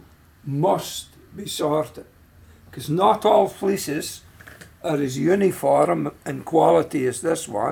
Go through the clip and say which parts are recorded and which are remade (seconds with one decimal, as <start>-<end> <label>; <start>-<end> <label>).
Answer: 0.0-2.1 recorded; 2.1-6.7 remade; 6.7-7.7 recorded